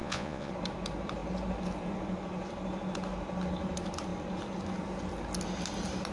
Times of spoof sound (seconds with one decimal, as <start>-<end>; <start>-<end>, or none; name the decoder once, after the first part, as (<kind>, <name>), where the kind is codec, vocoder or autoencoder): 0.0-0.5 (vocoder, Vocos)